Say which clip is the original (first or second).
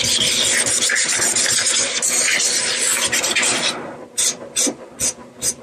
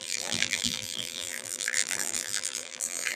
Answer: first